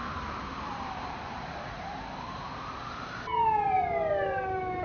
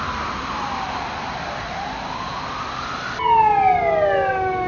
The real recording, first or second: second